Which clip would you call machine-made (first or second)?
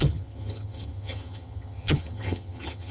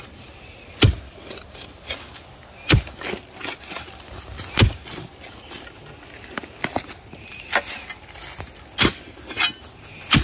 first